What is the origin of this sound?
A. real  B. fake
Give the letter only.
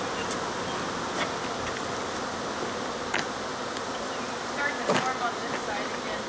A